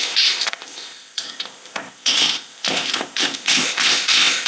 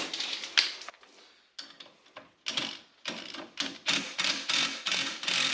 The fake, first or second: first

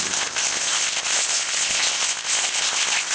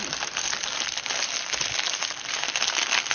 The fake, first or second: first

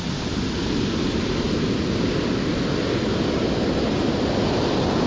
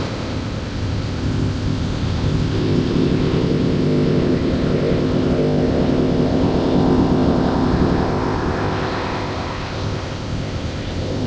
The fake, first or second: second